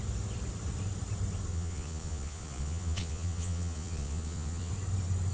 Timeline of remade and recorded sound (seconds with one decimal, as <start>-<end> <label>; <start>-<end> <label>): 0.0-1.5 recorded; 1.5-4.7 remade; 4.7-5.3 recorded